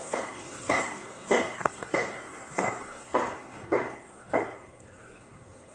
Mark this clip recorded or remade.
remade